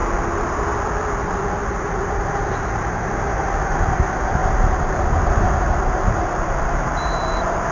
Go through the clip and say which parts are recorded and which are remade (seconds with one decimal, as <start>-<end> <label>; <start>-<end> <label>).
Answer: 0.0-1.8 recorded; 1.8-7.7 remade